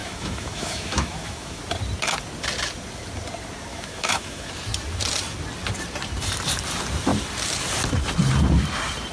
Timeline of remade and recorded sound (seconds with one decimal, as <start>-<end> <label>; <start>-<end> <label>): 0.0-1.6 remade; 1.6-3.7 recorded; 3.7-4.5 remade; 4.5-9.1 recorded